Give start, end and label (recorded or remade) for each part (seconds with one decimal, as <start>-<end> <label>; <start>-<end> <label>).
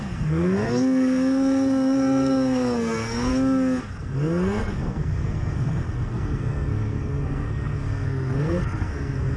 0.0-3.3 remade; 3.3-3.8 recorded; 3.8-9.4 remade